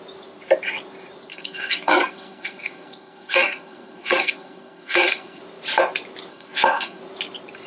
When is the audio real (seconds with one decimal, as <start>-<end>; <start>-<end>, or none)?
0.0-1.3; 5.4-6.3; 7.0-7.7